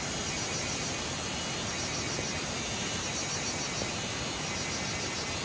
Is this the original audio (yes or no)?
yes